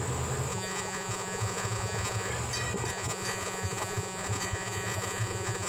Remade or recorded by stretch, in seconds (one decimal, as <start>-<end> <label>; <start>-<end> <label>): 0.0-0.5 recorded; 0.5-2.3 remade; 2.3-2.9 recorded; 2.9-5.7 remade